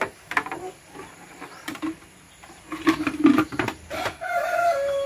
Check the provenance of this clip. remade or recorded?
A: remade